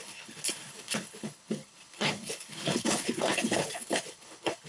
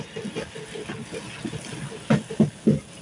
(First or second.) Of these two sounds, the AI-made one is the first